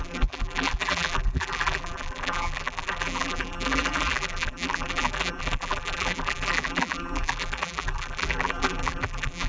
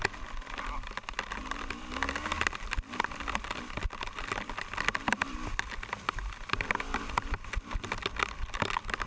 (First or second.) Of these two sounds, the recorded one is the second